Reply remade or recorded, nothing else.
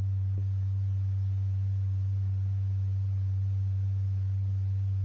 recorded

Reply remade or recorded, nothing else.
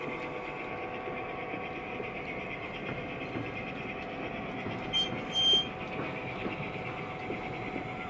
recorded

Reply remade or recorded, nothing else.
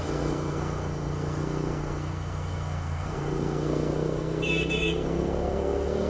remade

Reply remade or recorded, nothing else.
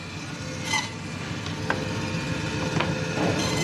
recorded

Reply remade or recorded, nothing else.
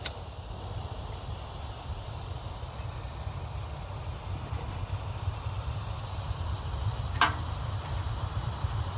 recorded